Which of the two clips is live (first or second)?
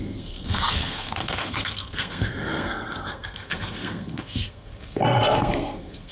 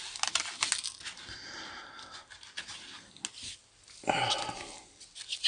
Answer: second